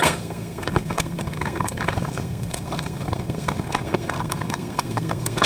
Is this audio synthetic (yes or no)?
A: yes